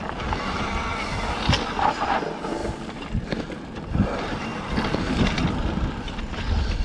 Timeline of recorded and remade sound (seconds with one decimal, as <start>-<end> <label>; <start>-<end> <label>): 0.0-6.8 recorded